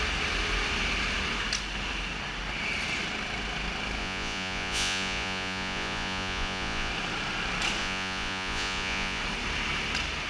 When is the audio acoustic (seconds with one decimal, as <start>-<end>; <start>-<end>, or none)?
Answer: 0.0-4.0; 6.9-7.8; 9.2-10.3